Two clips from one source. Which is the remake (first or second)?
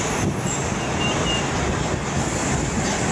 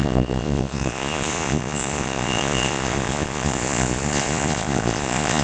second